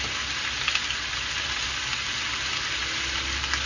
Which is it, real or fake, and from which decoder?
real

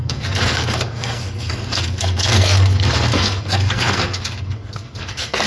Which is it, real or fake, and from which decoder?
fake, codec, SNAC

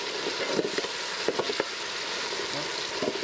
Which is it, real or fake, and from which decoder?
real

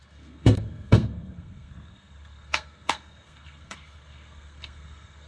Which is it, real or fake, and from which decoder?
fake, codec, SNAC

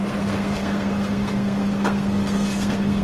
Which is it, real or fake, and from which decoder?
fake, codec, SNAC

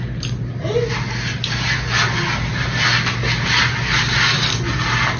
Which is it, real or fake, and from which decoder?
real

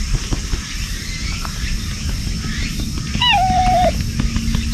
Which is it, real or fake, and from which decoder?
real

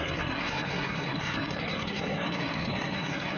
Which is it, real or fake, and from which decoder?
fake, codec, SNAC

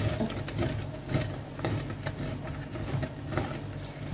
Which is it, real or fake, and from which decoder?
real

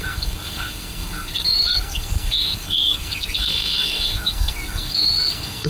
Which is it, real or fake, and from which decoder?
fake, codec, SNAC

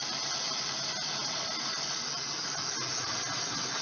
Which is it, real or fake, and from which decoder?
real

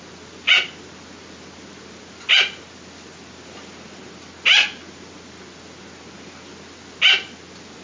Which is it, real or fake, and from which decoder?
real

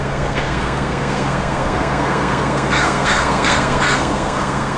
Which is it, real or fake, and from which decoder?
fake, codec, SNAC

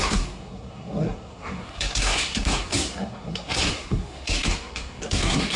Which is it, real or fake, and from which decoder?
fake, codec, SNAC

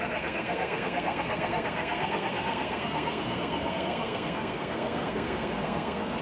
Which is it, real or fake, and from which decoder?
fake, codec, SNAC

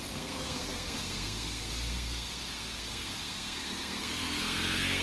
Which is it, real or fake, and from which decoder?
fake, codec, SNAC